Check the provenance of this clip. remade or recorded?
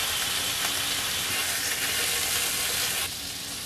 recorded